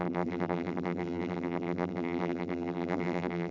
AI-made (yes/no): yes